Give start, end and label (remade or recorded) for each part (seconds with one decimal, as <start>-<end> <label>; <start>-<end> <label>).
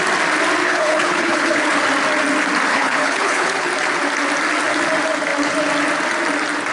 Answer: 0.0-0.6 recorded; 0.6-1.8 remade; 1.8-2.7 recorded; 2.7-3.7 remade; 3.7-6.7 recorded